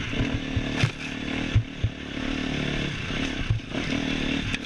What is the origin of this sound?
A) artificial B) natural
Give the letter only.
B